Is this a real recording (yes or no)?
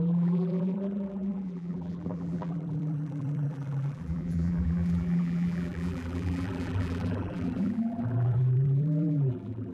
no